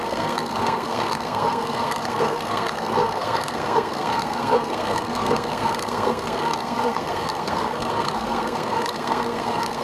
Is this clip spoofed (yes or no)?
yes